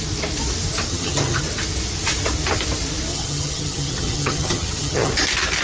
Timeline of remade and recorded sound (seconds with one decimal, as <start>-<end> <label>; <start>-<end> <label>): 0.0-0.9 recorded; 0.9-1.4 remade; 1.4-3.1 recorded; 3.1-5.1 remade; 5.1-5.6 recorded

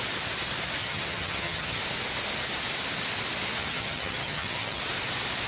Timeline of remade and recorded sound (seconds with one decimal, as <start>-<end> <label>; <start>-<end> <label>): 0.0-0.8 recorded; 0.8-1.8 remade; 1.8-3.6 recorded; 3.6-4.8 remade; 4.8-5.5 recorded

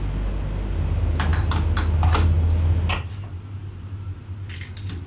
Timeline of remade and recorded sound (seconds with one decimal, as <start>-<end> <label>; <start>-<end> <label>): 0.0-5.1 recorded

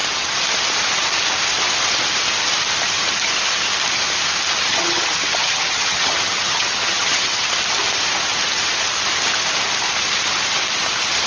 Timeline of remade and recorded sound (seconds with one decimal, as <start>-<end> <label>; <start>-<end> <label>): 0.0-4.7 recorded; 4.7-7.5 remade; 7.5-11.3 recorded

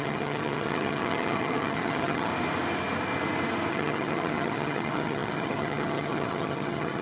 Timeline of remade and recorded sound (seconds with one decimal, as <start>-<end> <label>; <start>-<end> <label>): 0.0-2.3 remade; 2.3-3.7 recorded; 3.7-7.0 remade

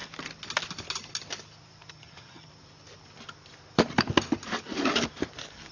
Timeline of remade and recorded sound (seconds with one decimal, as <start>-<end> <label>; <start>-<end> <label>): 0.0-1.9 recorded; 1.9-2.5 remade; 2.5-5.7 recorded

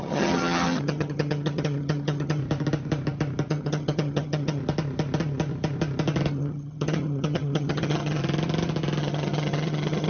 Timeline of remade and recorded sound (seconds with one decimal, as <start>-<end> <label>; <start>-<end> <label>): 0.0-2.4 remade; 2.4-3.5 recorded; 3.5-4.6 remade; 4.6-6.3 recorded; 6.3-8.2 remade; 8.2-9.0 recorded; 9.0-10.1 remade

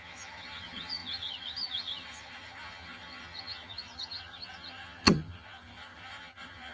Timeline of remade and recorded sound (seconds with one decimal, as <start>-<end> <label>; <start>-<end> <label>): 0.0-6.7 remade